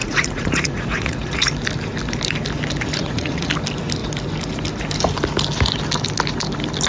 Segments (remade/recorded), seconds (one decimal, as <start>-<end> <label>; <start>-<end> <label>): 0.0-1.5 remade; 1.5-3.0 recorded; 3.0-3.5 remade; 3.5-6.9 recorded